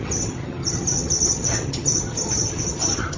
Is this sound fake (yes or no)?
yes